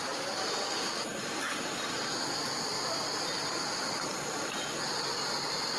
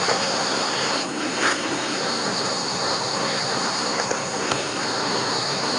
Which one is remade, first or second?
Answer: second